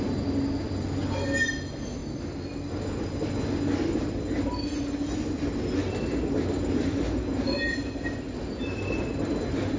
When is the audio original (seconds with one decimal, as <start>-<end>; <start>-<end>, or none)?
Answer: 0.0-9.8